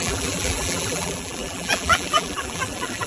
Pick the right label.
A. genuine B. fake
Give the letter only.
B